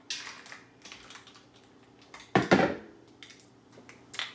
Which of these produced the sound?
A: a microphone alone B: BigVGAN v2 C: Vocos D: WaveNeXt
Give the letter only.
A